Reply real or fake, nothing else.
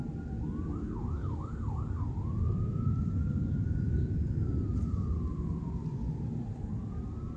real